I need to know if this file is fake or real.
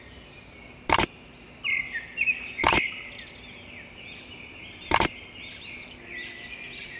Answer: real